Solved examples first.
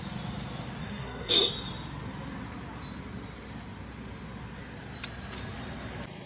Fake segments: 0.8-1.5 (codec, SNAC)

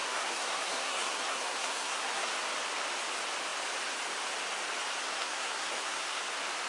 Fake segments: 0.0-2.3 (codec, SNAC); 5.0-6.2

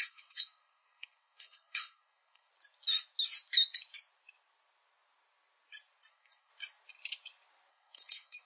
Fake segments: 0.0-2.5 (codec, SNAC); 6.1-6.5; 7.7-8.5